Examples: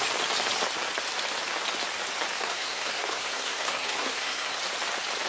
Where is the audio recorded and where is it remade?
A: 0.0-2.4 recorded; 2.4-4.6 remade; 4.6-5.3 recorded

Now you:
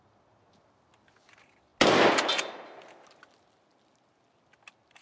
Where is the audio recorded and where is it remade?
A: 0.0-5.0 recorded

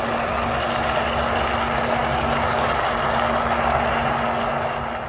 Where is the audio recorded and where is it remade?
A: 0.0-5.1 recorded

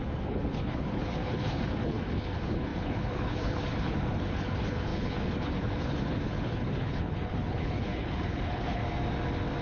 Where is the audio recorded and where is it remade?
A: 0.0-8.8 remade; 8.8-9.6 recorded

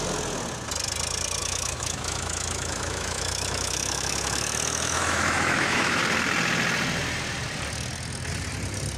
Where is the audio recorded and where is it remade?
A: 0.0-1.4 recorded; 1.4-6.0 remade; 6.0-9.0 recorded

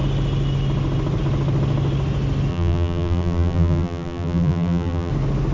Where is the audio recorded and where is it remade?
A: 0.0-2.5 recorded; 2.5-5.1 remade; 5.1-5.5 recorded